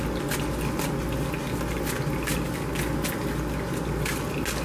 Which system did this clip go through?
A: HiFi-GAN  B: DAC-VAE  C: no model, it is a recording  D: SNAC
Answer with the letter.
C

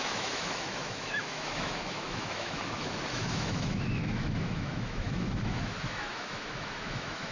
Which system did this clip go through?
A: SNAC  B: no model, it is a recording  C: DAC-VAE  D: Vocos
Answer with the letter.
C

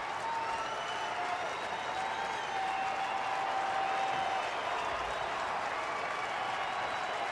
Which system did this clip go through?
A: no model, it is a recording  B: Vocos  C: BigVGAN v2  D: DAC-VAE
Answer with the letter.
A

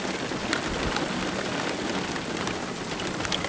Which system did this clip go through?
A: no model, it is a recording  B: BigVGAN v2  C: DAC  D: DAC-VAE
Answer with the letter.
A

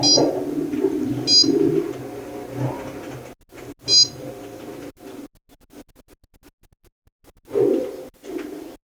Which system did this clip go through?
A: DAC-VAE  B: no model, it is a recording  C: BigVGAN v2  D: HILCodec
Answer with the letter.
B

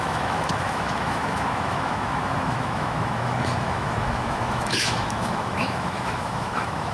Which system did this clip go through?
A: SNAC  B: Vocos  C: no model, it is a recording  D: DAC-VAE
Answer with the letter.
D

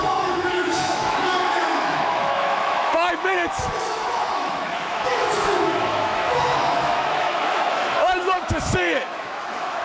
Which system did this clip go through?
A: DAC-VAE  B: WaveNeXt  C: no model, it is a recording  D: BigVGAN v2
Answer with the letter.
A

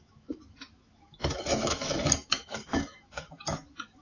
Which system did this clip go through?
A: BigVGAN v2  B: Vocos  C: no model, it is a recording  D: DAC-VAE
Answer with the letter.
D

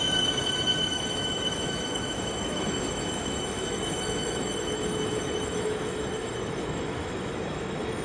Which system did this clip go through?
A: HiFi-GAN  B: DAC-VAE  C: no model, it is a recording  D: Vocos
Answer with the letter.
B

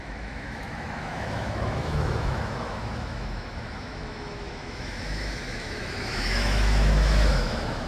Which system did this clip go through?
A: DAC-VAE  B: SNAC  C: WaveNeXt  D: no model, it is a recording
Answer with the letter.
A